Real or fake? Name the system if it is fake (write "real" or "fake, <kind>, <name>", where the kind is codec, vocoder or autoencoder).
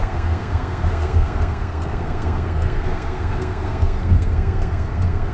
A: fake, codec, SNAC